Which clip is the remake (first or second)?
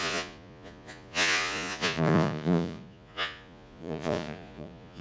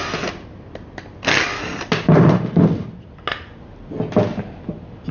first